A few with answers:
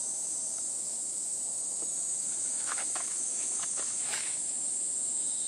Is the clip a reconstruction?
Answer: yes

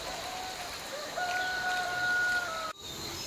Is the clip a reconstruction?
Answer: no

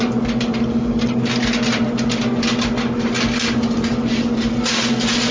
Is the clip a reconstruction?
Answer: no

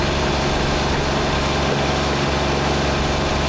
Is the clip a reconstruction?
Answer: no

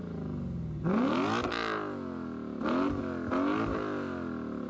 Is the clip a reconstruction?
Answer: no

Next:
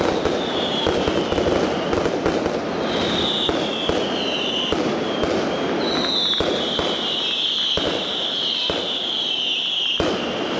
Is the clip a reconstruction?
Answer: no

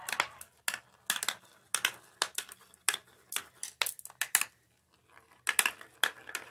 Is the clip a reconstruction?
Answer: no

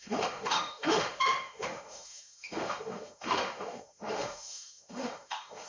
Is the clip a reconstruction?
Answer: yes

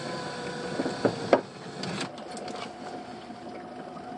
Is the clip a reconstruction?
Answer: no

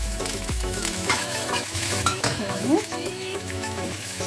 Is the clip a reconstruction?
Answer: yes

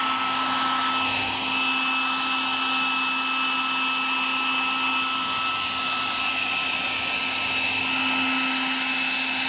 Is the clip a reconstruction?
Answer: no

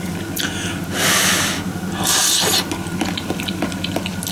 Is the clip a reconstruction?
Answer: no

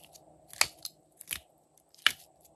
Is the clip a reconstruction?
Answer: no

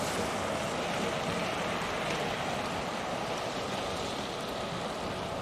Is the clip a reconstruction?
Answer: no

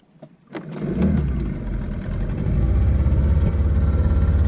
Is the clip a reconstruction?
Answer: no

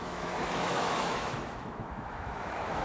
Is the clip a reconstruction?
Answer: yes